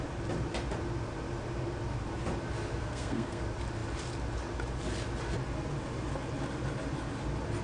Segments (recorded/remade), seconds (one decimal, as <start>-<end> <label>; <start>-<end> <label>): 0.0-2.8 recorded; 2.8-3.4 remade; 3.4-7.6 recorded